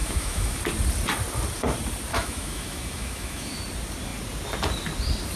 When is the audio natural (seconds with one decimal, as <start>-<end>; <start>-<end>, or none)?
0.6-2.1; 3.6-5.4